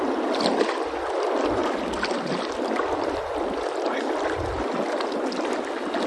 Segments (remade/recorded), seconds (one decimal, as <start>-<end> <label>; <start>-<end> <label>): 0.0-6.1 recorded